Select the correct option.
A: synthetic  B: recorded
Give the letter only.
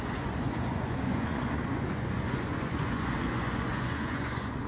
A